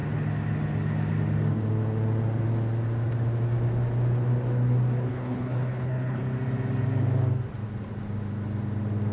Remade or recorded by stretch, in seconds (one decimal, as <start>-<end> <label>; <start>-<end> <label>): 0.0-5.1 recorded; 5.1-6.2 remade; 6.2-9.1 recorded